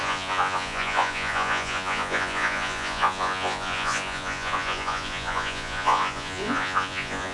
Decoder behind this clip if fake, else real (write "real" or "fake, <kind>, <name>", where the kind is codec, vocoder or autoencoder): fake, vocoder, Vocos